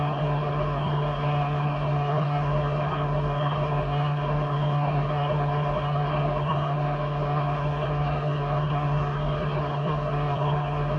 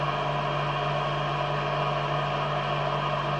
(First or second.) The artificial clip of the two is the first